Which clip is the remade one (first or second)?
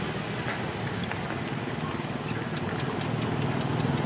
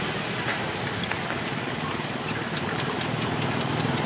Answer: second